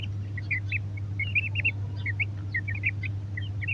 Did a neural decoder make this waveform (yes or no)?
no